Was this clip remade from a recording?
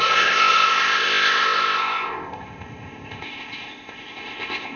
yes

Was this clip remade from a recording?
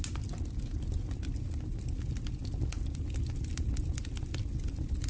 no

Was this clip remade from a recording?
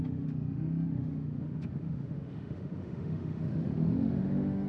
yes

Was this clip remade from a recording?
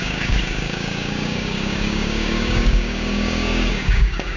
yes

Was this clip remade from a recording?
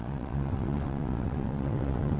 yes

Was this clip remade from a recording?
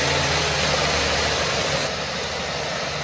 no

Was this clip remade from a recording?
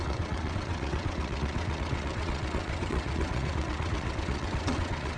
yes